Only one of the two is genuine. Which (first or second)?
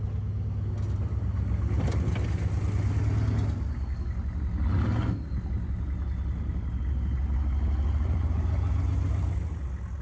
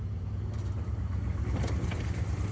first